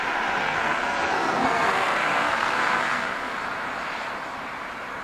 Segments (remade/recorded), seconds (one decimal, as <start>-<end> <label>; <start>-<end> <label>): 0.0-0.4 recorded; 0.4-3.4 remade; 3.4-5.0 recorded